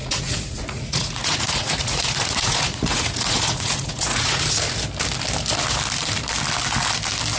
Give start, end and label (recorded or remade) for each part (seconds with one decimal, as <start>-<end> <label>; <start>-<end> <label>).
0.0-4.4 remade; 4.4-7.4 recorded